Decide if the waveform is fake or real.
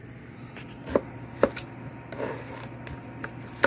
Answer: real